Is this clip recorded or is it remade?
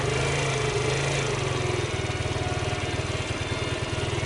recorded